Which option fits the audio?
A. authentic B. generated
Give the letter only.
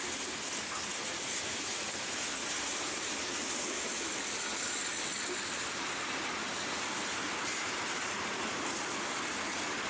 A